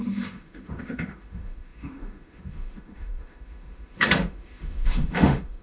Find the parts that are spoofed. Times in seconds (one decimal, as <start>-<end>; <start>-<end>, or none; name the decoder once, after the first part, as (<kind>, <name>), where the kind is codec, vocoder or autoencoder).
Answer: 0.0-5.6 (autoencoder, DAC-VAE)